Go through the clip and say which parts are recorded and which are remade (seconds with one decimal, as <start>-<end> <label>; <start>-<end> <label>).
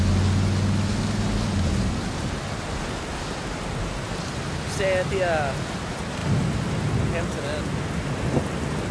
0.0-8.9 recorded